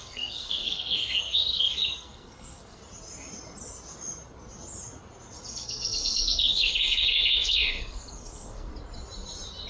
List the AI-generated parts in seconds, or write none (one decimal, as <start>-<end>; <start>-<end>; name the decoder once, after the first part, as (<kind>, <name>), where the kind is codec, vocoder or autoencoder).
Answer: 0.0-2.8 (codec, SNAC); 5.5-8.7